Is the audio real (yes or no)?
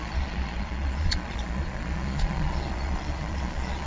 no